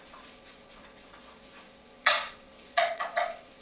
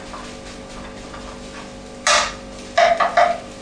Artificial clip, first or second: first